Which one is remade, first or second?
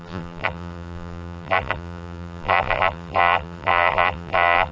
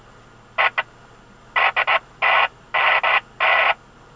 first